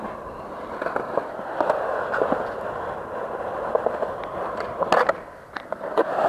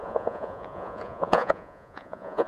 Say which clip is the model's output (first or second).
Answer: second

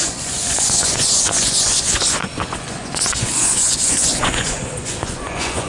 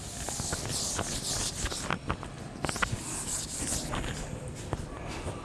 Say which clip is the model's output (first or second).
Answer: first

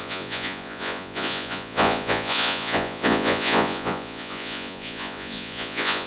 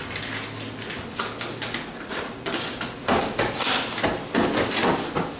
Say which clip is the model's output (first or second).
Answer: first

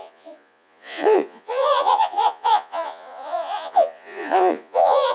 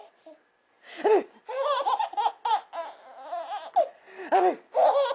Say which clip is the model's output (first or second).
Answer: first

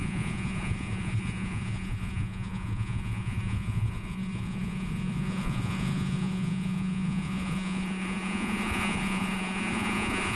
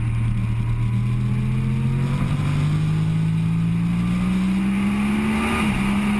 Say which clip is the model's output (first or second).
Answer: first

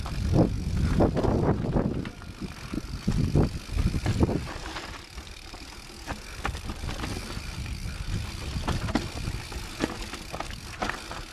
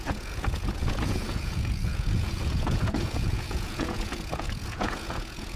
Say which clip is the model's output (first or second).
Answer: second